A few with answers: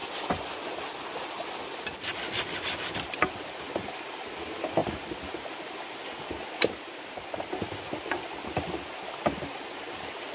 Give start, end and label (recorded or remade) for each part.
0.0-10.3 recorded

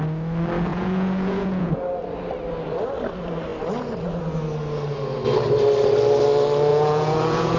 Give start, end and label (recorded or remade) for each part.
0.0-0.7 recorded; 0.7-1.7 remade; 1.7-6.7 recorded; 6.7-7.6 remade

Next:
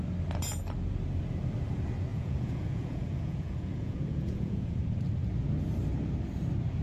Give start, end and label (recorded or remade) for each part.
0.0-2.1 recorded; 2.1-4.8 remade; 4.8-6.8 recorded

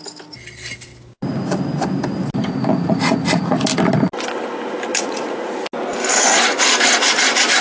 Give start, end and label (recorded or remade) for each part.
0.0-2.7 recorded; 2.7-3.6 remade; 3.6-4.9 recorded; 4.9-5.5 remade; 5.5-7.6 recorded

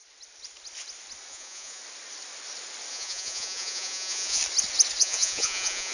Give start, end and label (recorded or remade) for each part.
0.0-1.3 recorded; 1.3-1.8 remade; 1.8-2.9 recorded; 2.9-4.4 remade; 4.4-5.0 recorded; 5.0-5.9 remade

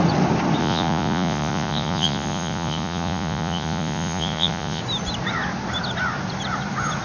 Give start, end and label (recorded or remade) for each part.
0.0-0.6 recorded; 0.6-4.8 remade; 4.8-7.0 recorded

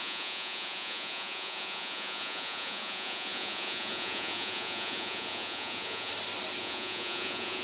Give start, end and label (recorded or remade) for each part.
0.0-6.1 remade; 6.1-6.6 recorded; 6.6-7.6 remade